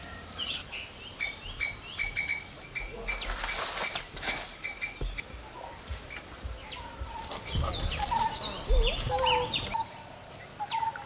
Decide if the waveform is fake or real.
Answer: real